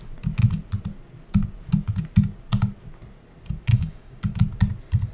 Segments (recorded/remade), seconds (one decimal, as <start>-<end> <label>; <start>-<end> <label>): 0.0-3.7 recorded; 3.7-4.2 remade; 4.2-5.1 recorded